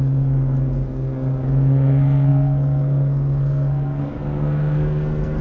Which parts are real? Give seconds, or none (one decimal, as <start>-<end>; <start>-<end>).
none